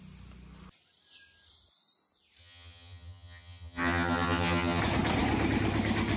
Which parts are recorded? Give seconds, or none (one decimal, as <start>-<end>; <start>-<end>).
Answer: 0.0-2.4; 4.8-6.2